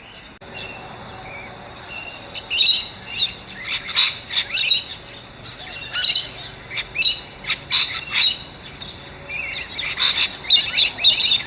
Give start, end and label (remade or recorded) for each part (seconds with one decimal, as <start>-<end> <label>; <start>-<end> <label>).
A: 0.0-11.5 recorded